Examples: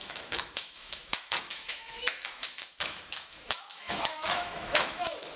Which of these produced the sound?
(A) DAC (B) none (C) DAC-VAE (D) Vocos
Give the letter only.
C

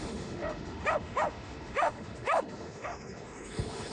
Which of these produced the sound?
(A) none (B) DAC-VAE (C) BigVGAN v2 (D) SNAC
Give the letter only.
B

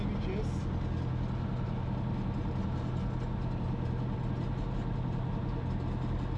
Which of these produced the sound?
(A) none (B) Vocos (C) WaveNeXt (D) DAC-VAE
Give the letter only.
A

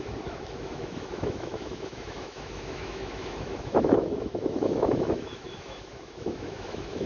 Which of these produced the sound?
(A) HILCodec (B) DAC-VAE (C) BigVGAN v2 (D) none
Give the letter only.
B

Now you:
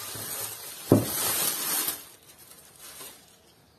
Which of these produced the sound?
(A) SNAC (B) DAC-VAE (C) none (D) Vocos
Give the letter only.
C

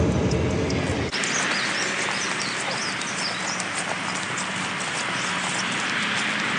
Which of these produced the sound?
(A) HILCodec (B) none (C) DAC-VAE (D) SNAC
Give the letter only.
B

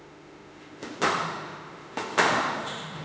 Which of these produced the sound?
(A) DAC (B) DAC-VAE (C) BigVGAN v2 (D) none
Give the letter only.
B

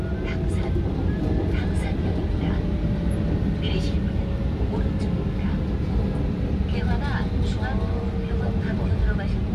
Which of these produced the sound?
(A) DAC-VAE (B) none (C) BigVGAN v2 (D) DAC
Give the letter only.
B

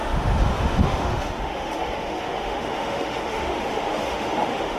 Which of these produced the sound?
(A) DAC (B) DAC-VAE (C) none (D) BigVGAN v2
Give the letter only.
B